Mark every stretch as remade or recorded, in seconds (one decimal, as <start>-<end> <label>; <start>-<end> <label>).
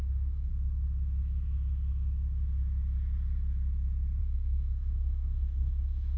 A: 0.0-0.5 remade; 0.5-4.2 recorded; 4.2-6.2 remade